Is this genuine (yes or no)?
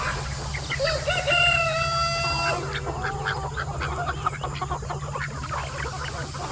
yes